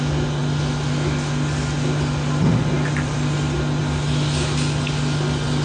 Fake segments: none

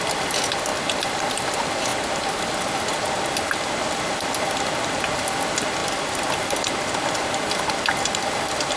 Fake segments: none

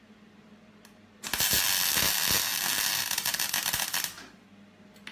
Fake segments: none

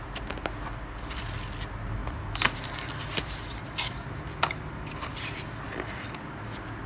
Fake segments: none

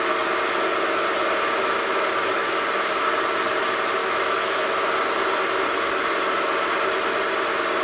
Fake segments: 1.8-2.5; 4.0-4.7